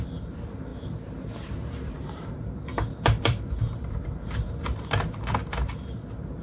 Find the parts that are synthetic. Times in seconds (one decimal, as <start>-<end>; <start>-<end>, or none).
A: 0.0-6.4